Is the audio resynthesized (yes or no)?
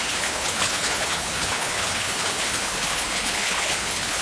yes